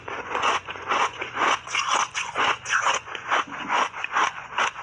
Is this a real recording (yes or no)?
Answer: no